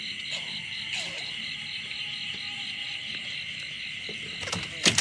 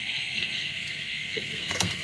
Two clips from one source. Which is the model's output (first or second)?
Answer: second